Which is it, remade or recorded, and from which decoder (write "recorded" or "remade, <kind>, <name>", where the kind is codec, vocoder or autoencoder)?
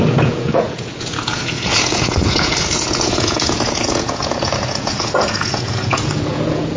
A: remade, vocoder, Vocos